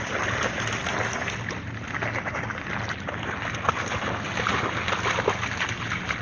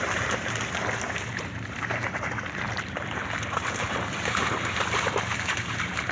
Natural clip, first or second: first